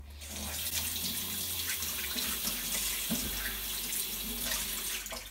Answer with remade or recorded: recorded